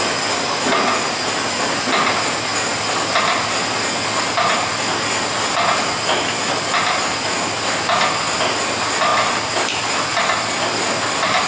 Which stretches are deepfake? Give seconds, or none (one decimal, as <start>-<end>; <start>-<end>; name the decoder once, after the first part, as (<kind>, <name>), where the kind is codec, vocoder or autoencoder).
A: none